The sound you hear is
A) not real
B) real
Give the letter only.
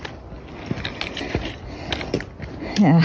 B